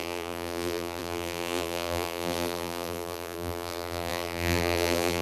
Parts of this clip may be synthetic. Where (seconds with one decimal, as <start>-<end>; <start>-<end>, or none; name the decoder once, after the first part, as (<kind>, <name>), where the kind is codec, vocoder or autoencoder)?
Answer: 0.0-5.2 (vocoder, BigVGAN v2)